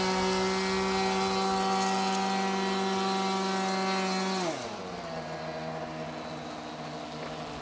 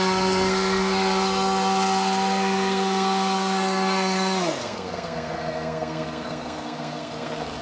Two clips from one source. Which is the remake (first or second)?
second